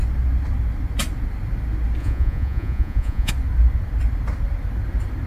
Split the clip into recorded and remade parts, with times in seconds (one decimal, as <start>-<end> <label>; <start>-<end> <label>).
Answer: 0.0-2.0 recorded; 2.0-3.3 remade; 3.3-5.3 recorded